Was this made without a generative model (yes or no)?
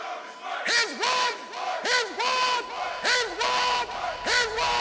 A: yes